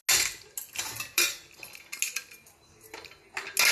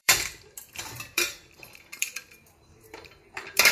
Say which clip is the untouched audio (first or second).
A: first